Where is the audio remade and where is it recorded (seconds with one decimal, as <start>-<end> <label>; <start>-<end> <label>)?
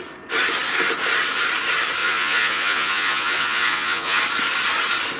0.0-2.0 recorded; 2.0-4.2 remade; 4.2-5.2 recorded